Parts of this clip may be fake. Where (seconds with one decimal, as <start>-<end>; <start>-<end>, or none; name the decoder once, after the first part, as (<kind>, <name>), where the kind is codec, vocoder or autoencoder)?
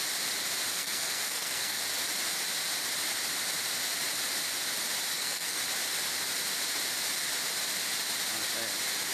0.7-1.8 (codec, SNAC); 5.1-5.6